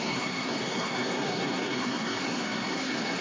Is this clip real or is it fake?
fake